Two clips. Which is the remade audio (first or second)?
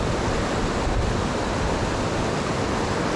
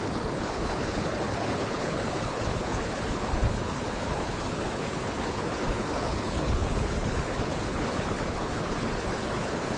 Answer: second